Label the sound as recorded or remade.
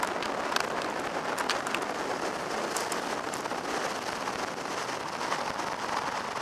recorded